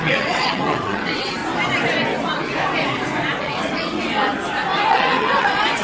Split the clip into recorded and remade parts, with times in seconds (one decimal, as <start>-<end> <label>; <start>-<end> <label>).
0.0-1.4 remade; 1.4-3.4 recorded; 3.4-4.3 remade; 4.3-4.9 recorded; 4.9-5.8 remade